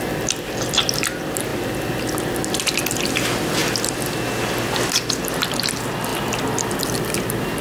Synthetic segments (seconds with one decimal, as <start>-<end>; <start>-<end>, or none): none